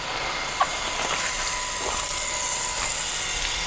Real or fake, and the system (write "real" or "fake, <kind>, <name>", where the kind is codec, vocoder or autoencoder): real